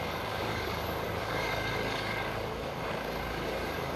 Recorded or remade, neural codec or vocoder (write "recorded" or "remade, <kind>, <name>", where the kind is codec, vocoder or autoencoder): remade, codec, DAC